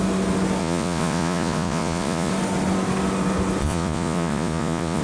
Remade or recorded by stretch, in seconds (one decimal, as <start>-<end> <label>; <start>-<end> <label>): 0.0-0.6 recorded; 0.6-2.3 remade; 2.3-3.6 recorded; 3.6-5.0 remade